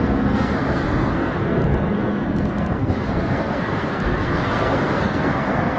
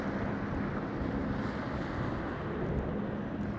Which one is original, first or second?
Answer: second